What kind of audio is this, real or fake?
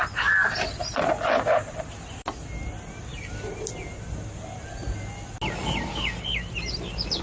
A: real